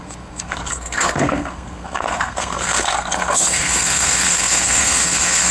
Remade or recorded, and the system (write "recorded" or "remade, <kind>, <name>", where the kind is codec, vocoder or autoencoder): remade, codec, SNAC